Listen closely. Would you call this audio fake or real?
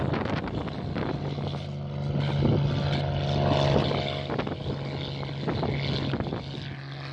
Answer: real